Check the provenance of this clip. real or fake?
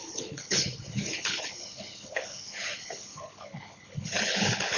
fake